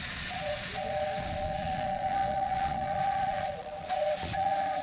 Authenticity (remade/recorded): remade